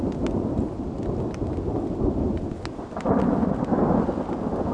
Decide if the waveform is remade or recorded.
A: recorded